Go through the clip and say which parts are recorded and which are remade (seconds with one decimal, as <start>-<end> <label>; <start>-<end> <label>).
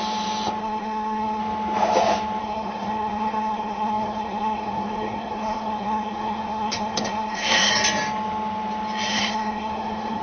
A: 0.0-0.6 recorded; 0.6-1.4 remade; 1.4-2.4 recorded; 2.4-7.7 remade; 7.7-9.1 recorded; 9.1-10.2 remade